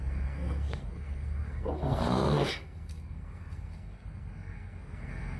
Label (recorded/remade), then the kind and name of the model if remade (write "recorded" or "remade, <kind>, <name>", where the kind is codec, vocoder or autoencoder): remade, codec, SNAC